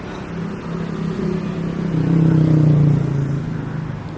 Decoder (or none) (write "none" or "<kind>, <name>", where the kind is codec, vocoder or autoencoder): none